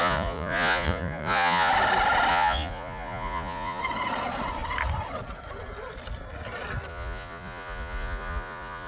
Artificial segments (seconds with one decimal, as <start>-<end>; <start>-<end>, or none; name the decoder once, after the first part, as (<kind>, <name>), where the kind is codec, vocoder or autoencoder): 0.0-1.7 (vocoder, Vocos); 2.3-3.8; 6.9-8.9